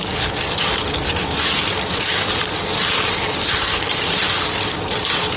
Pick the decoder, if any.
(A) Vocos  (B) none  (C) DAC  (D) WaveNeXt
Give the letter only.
B